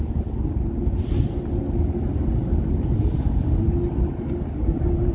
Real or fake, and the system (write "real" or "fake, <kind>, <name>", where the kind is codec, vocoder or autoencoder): real